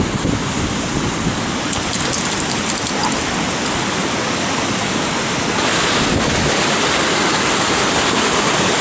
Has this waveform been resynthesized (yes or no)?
no